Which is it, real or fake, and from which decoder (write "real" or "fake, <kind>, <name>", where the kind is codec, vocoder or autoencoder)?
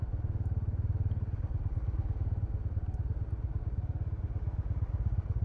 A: real